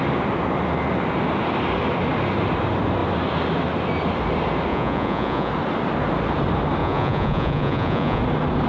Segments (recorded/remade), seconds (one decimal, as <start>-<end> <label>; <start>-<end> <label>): 0.0-4.7 recorded; 4.7-5.5 remade; 5.5-6.8 recorded; 6.8-8.2 remade; 8.2-8.7 recorded